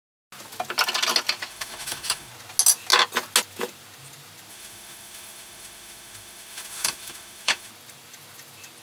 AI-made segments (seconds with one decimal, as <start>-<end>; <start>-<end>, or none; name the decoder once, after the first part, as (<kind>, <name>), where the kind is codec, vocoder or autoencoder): 1.5-2.3 (autoencoder, DAC-VAE); 4.5-7.7